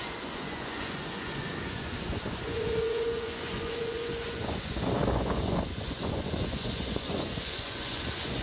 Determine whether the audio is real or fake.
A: fake